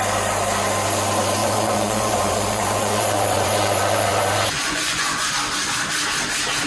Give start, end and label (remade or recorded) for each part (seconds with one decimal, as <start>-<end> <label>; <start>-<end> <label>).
0.0-1.4 recorded; 1.4-5.3 remade; 5.3-6.7 recorded